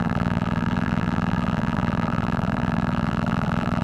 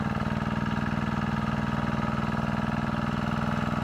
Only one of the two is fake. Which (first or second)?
first